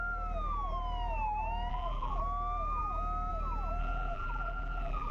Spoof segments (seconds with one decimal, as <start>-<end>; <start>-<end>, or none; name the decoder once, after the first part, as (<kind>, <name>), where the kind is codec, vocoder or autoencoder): 1.7-2.2 (vocoder, BigVGAN v2); 3.8-5.1